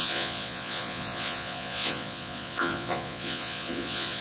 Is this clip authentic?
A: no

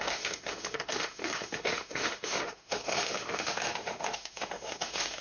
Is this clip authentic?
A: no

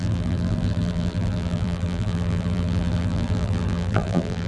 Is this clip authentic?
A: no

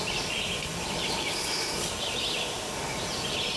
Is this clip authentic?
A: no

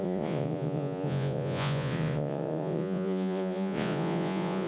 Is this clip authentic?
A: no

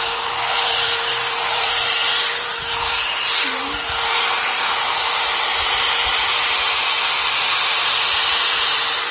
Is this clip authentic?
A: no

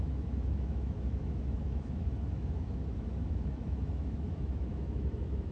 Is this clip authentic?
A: no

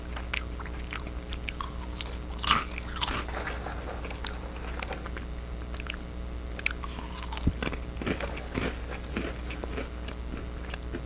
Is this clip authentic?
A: yes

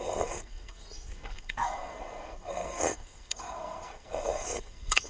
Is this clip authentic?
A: no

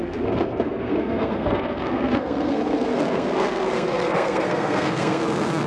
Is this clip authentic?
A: no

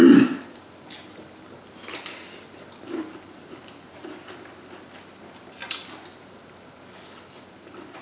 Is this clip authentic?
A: yes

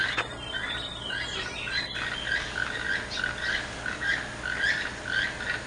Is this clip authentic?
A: yes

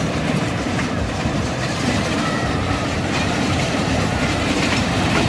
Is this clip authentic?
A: no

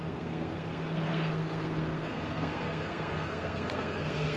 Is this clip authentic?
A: no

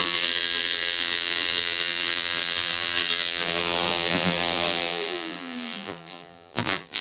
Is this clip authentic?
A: no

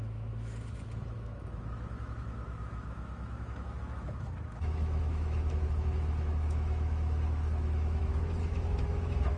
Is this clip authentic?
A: no